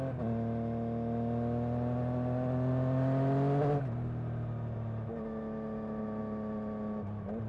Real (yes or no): yes